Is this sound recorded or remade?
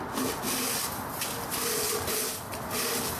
recorded